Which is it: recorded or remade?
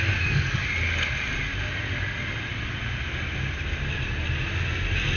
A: recorded